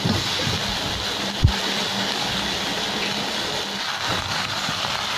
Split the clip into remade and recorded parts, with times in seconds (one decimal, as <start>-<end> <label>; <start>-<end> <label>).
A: 0.0-1.9 recorded; 1.9-2.5 remade; 2.5-3.9 recorded; 3.9-4.7 remade; 4.7-5.2 recorded